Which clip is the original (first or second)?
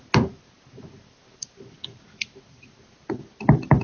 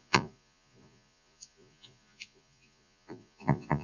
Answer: first